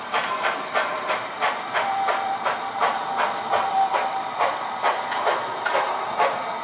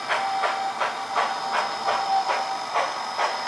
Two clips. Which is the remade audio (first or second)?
first